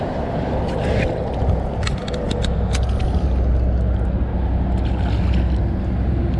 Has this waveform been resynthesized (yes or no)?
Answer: no